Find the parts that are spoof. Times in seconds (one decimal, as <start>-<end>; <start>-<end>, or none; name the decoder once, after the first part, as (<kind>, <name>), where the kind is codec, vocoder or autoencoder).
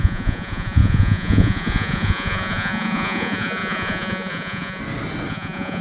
0.0-4.8 (vocoder, Vocos); 5.3-5.8